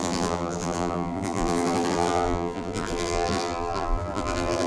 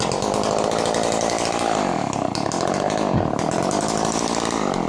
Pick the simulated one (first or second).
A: first